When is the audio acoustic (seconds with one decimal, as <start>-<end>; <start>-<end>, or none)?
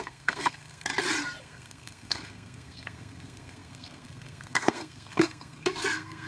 0.9-1.4